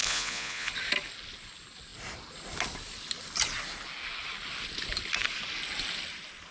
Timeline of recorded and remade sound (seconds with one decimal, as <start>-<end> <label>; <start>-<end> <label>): 0.0-0.7 remade; 0.7-6.5 recorded